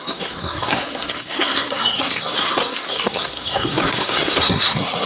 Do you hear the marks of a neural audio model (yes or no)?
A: yes